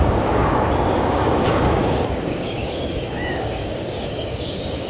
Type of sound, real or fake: fake